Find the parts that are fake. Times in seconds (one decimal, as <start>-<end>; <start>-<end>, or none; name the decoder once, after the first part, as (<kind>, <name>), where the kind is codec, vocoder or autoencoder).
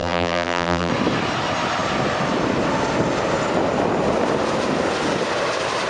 0.0-0.9 (vocoder, BigVGAN v2)